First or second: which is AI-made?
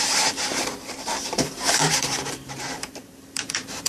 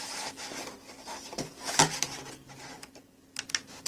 first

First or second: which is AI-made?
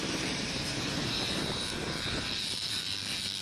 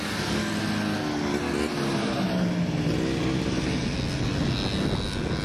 first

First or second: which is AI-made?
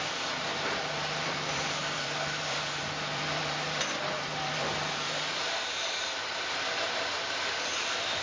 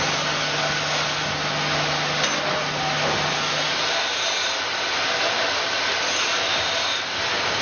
first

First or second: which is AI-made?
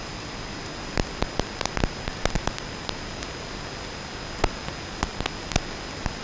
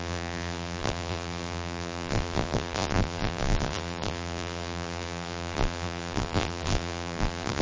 second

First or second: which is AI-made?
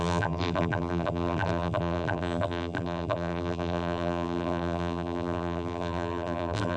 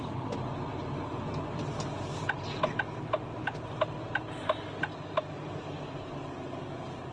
first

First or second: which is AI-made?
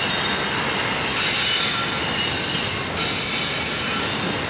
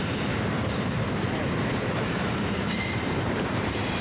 second